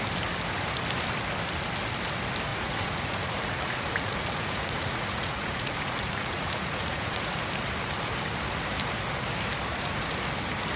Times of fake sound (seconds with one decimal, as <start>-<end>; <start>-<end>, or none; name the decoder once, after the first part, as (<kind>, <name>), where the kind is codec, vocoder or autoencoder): 2.5-7.4 (vocoder, Vocos); 9.7-10.2